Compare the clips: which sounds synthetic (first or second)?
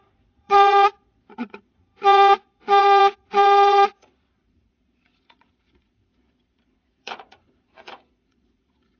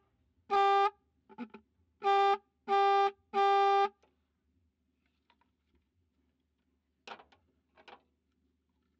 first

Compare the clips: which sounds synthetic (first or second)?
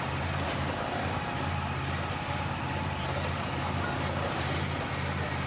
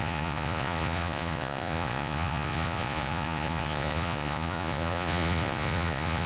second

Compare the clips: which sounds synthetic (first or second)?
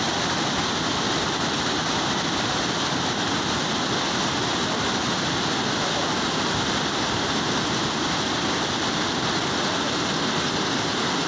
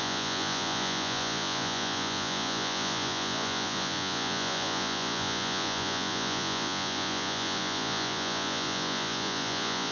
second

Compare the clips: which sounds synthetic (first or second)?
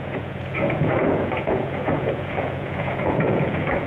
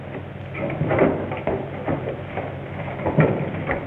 first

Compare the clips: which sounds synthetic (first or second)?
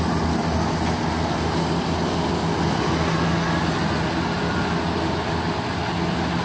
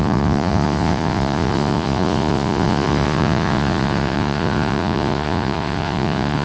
second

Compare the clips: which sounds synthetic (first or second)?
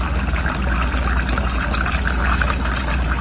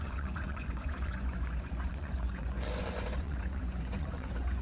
second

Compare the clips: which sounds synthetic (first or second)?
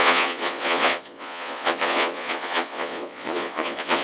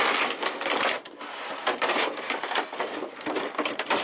first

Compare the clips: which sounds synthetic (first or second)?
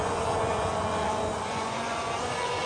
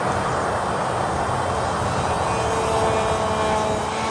first